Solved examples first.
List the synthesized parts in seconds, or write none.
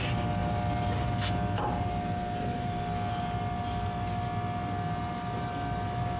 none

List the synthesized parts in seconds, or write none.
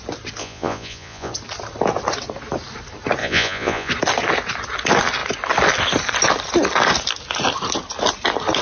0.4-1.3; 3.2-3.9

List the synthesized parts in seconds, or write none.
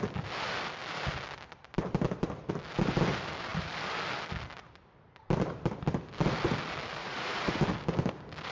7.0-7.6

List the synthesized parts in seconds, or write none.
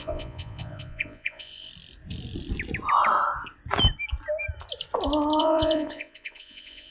0.0-1.7; 5.4-6.9